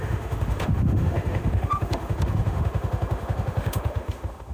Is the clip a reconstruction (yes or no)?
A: yes